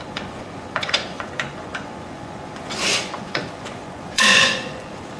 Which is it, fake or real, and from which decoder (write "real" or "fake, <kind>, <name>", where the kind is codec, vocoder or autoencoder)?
fake, vocoder, Vocos